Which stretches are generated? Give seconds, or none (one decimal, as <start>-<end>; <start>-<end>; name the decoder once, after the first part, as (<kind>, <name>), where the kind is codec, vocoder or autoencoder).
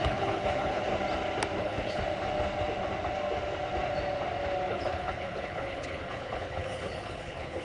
0.0-0.9 (codec, HILCodec); 1.6-2.0; 4.7-7.6